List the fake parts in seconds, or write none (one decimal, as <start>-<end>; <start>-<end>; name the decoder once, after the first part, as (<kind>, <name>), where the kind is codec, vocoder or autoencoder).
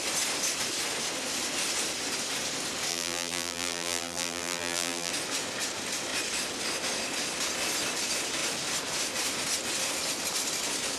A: 2.9-5.1 (vocoder, BigVGAN v2)